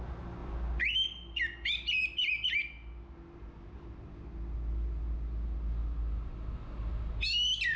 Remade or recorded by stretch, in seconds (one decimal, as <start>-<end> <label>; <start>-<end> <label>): 0.0-7.8 recorded